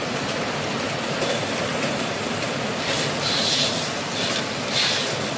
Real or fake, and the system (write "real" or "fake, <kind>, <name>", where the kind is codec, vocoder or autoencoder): real